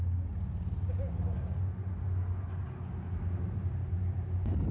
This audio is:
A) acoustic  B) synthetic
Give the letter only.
A